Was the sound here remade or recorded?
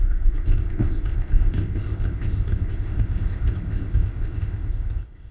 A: remade